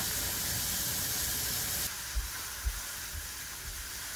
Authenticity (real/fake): real